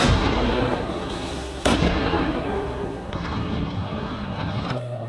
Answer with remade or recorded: remade